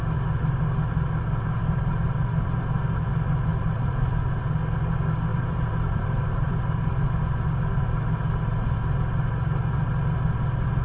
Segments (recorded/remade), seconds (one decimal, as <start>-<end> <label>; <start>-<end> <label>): 0.0-1.6 recorded; 1.6-2.6 remade; 2.6-3.5 recorded; 3.5-4.6 remade; 4.6-5.3 recorded; 5.3-6.5 remade; 6.5-10.8 recorded

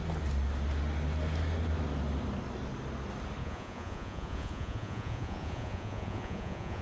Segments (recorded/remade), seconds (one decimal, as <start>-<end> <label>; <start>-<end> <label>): 0.0-3.4 recorded; 3.4-6.8 remade

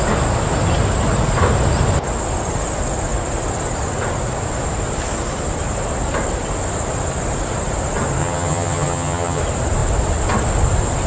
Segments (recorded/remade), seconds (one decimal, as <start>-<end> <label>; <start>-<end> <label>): 0.0-8.2 recorded; 8.2-9.4 remade; 9.4-11.1 recorded